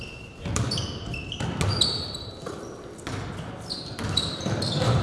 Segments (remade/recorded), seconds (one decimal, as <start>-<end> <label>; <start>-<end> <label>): 0.0-0.8 remade; 0.8-3.8 recorded; 3.8-5.0 remade